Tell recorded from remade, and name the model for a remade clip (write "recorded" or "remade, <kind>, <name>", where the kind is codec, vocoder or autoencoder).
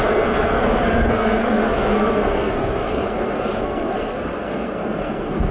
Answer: remade, codec, SNAC